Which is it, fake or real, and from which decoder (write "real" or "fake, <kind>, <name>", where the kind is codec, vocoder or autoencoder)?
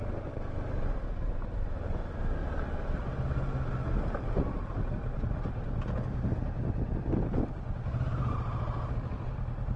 real